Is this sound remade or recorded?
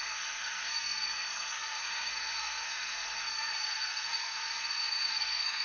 remade